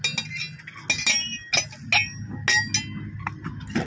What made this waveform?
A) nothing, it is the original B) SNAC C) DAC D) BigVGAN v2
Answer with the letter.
A